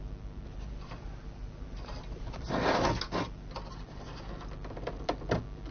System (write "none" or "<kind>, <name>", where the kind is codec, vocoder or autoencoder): none